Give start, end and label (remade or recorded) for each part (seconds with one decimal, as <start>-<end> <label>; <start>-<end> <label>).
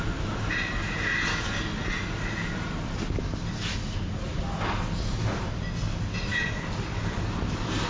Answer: 0.0-7.9 recorded